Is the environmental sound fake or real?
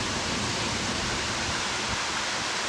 real